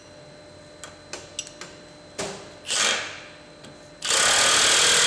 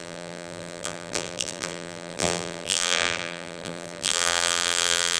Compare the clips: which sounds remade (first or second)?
second